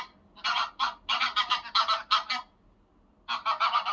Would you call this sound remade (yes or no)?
no